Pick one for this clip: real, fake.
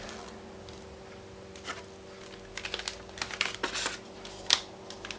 real